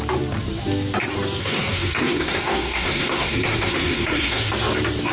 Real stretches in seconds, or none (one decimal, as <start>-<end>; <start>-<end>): 0.0-1.4; 4.5-5.1